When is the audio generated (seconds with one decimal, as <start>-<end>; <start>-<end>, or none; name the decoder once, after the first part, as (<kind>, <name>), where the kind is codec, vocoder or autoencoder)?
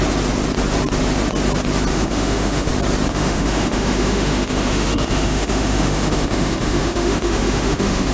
1.9-2.7 (autoencoder, DAC-VAE); 3.1-8.1